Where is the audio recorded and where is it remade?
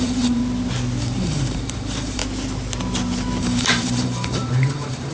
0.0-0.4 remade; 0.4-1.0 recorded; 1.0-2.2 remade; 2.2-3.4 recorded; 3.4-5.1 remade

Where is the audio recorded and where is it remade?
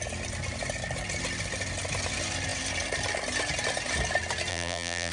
0.0-4.5 recorded; 4.5-5.1 remade